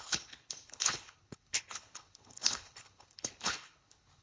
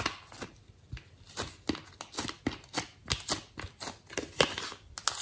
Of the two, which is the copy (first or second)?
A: first